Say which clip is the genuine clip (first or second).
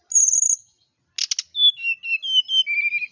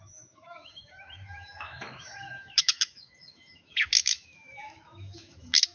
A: first